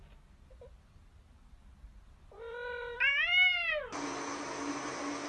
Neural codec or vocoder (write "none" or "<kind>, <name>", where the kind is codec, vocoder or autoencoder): none